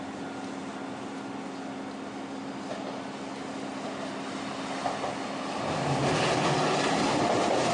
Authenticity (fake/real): real